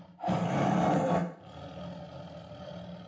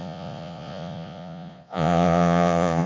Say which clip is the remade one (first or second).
second